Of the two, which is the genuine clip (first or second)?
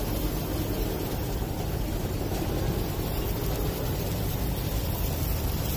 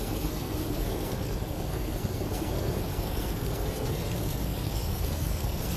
first